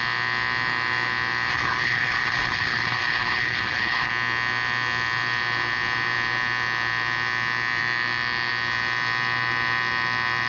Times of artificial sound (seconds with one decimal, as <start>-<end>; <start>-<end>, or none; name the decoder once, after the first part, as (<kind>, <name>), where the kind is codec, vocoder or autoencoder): 1.5-4.1 (codec, HILCodec)